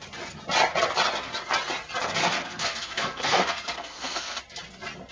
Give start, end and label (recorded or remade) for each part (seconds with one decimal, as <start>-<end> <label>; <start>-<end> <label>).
0.0-2.2 recorded; 2.2-4.4 remade; 4.4-5.1 recorded